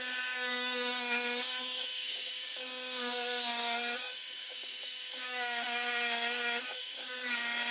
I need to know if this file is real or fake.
fake